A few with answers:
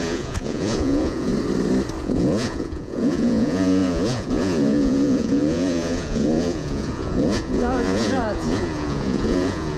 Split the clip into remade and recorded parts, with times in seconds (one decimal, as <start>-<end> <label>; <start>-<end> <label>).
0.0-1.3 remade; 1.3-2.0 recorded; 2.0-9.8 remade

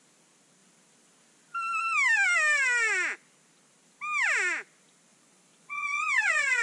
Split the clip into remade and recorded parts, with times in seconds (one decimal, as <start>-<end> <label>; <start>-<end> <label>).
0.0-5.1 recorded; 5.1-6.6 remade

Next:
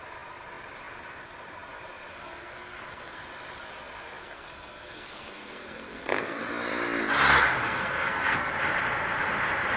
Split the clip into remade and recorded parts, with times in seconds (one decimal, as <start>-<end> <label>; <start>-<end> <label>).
0.0-2.1 recorded; 2.1-3.2 remade; 3.2-4.2 recorded; 4.2-6.4 remade; 6.4-7.6 recorded; 7.6-8.5 remade; 8.5-9.8 recorded

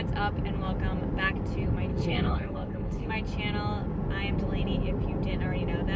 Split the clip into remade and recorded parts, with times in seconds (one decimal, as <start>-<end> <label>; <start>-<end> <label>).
0.0-1.9 recorded; 1.9-3.1 remade; 3.1-6.0 recorded